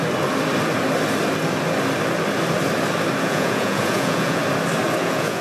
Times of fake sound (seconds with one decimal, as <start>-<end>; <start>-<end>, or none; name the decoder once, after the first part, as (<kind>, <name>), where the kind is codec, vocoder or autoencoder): 3.2-4.4 (vocoder, Vocos); 5.0-5.4